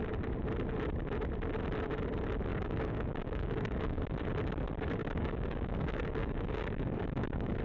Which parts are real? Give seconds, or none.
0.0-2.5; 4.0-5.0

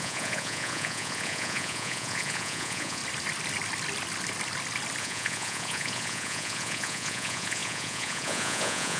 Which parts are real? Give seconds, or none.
3.0-5.0